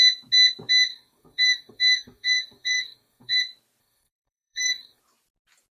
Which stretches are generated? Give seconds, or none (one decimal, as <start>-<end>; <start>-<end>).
0.9-3.4; 3.8-5.0